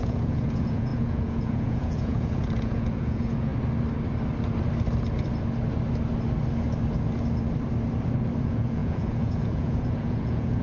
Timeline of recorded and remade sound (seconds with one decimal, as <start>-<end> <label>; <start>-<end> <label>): 0.0-3.5 remade; 3.5-8.4 recorded; 8.4-10.6 remade